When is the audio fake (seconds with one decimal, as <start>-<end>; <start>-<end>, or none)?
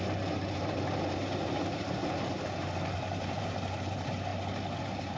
0.0-2.0; 2.9-4.3; 4.8-5.2